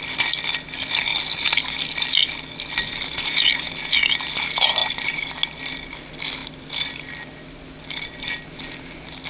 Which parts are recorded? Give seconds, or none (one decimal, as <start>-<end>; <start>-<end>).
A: 0.0-9.3